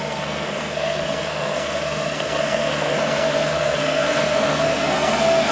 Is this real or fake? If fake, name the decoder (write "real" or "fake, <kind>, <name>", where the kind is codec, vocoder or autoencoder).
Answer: fake, codec, SNAC